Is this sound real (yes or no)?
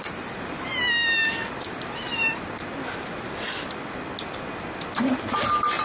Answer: yes